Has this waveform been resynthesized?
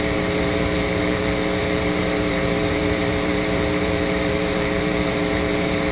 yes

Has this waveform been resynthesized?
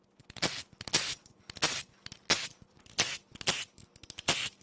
no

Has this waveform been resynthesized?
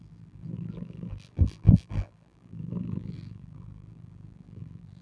yes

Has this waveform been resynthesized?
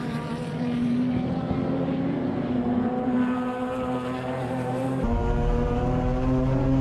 yes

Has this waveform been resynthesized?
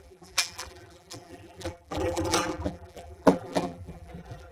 yes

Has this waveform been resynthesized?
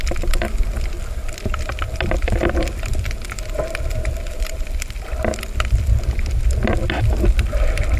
no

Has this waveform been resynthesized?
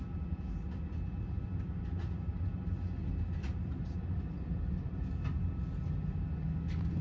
no